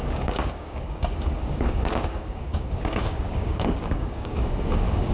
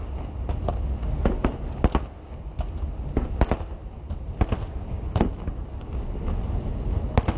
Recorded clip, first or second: second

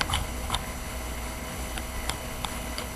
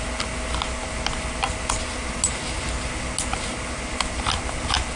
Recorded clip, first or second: second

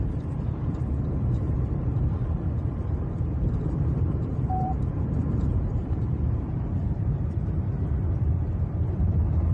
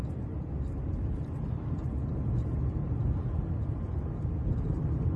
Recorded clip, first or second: second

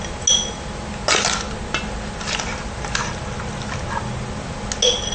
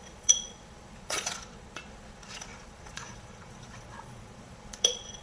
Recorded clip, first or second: first